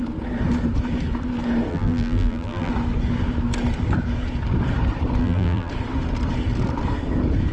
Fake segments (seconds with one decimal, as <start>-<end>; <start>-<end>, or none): 1.7-2.7; 5.2-5.7